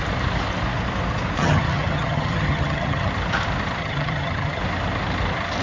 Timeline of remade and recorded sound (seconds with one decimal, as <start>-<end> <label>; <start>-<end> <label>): 0.0-1.4 recorded; 1.4-3.1 remade; 3.1-3.8 recorded; 3.8-4.6 remade; 4.6-5.6 recorded